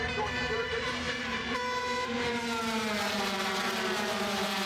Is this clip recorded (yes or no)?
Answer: no